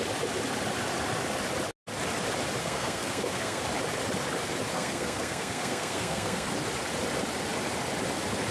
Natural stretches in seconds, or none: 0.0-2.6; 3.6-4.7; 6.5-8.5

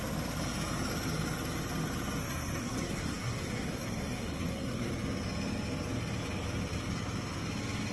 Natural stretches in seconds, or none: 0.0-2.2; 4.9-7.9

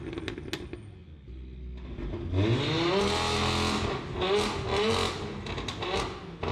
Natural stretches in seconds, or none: 0.0-6.5

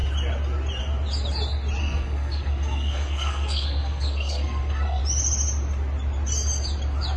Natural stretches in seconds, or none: 0.0-1.8; 5.0-7.2

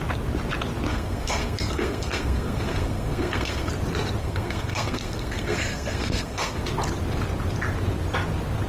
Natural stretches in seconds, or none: 0.0-0.9; 3.7-4.2; 6.6-8.7

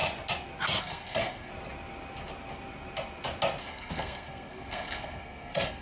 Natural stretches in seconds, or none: 0.0-0.8; 1.5-3.6

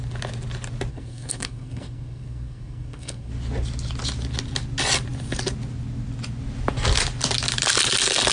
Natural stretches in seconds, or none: 0.0-0.9; 3.3-8.3

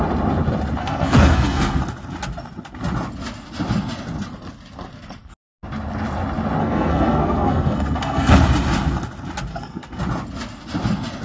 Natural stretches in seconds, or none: 0.0-0.8; 1.8-6.6; 8.3-9.5; 10.0-11.2